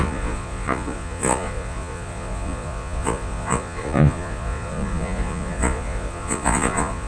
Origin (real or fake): fake